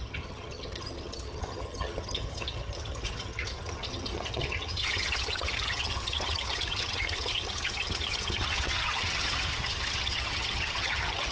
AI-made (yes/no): yes